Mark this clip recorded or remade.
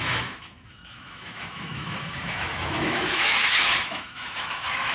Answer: remade